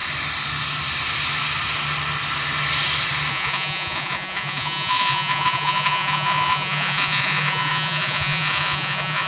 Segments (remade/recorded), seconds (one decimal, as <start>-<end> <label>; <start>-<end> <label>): 0.0-3.3 recorded; 3.3-9.3 remade